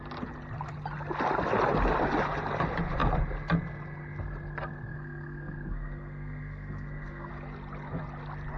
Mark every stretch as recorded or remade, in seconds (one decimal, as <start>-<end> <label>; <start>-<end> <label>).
0.0-4.9 recorded; 4.9-7.3 remade; 7.3-8.6 recorded